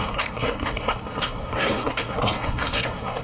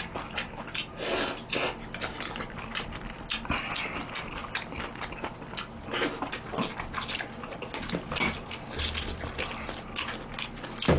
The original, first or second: second